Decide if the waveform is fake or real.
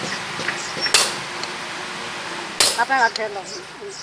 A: real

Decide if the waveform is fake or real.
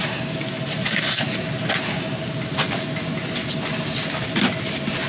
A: real